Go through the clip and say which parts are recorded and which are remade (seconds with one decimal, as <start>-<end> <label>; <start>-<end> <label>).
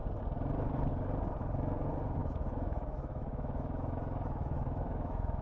0.0-2.2 recorded; 2.2-5.4 remade